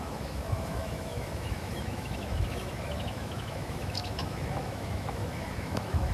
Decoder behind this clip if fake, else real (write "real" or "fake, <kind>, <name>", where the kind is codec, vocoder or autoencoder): fake, autoencoder, DAC-VAE